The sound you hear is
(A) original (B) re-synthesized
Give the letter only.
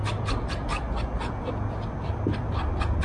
A